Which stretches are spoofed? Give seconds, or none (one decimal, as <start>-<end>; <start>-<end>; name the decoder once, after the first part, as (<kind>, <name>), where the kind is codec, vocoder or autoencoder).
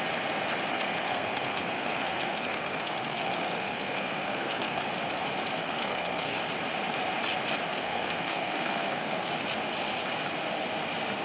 0.7-4.8 (codec, SNAC); 5.6-6.4; 7.7-9.3